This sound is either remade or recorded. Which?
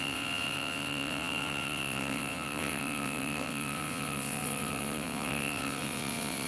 remade